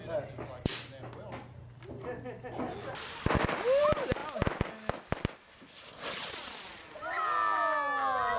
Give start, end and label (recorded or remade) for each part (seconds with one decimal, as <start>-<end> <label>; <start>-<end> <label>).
0.0-8.4 recorded